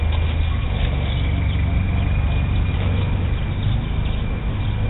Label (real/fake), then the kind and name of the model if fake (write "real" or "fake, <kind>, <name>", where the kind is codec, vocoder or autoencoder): real